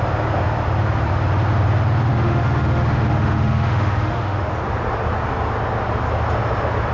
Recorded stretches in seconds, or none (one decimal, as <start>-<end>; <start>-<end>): 0.0-2.1; 4.5-6.9